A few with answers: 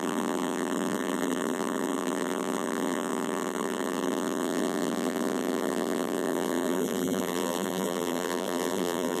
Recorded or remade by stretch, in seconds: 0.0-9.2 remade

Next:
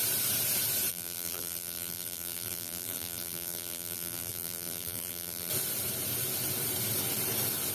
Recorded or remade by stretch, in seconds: 0.0-0.9 recorded; 0.9-5.5 remade; 5.5-7.7 recorded

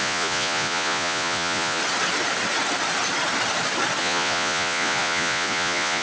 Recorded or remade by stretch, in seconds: 0.0-1.8 remade; 1.8-4.0 recorded; 4.0-6.0 remade

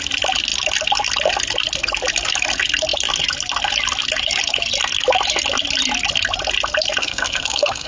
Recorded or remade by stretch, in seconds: 0.0-7.0 recorded; 7.0-7.9 remade

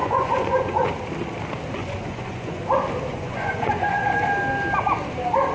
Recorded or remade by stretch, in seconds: 0.0-0.9 remade; 0.9-1.8 recorded; 1.8-2.6 remade; 2.6-3.1 recorded; 3.1-4.0 remade; 4.0-5.5 recorded